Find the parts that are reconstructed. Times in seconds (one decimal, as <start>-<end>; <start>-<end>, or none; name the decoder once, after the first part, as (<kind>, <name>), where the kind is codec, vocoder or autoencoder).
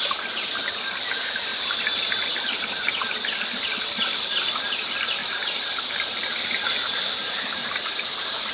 5.2-6.2 (vocoder, BigVGAN v2); 7.6-8.5